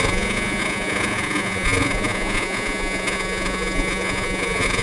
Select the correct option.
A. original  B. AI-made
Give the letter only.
B